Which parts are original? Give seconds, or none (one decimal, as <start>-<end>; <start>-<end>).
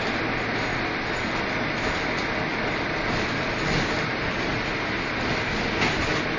0.0-2.5; 4.5-6.4